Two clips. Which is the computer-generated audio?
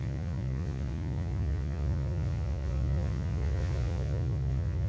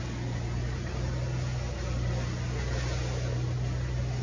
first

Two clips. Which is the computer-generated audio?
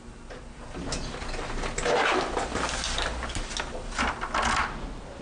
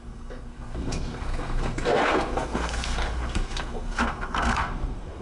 second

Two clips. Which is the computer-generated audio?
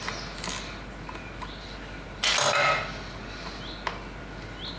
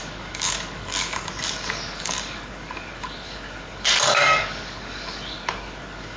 second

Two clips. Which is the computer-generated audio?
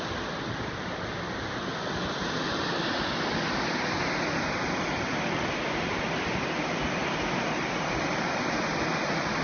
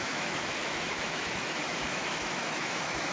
second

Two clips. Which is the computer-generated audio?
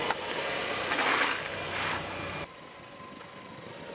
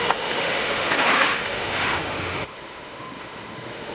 second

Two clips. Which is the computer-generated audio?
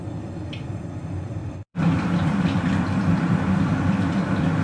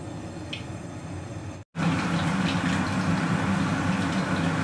first